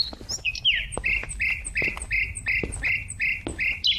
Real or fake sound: real